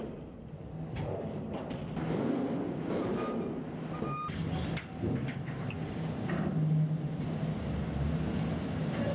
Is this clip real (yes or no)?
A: yes